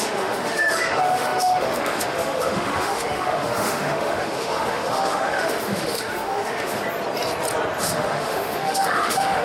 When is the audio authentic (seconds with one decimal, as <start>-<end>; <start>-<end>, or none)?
6.8-7.8